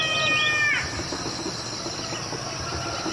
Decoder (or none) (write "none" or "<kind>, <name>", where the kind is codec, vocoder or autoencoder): none